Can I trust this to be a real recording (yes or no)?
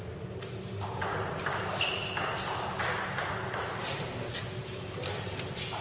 yes